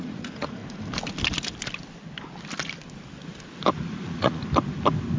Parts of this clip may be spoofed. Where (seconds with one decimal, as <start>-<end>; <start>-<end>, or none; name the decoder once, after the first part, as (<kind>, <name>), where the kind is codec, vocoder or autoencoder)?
0.0-0.6 (vocoder, Vocos); 3.7-4.4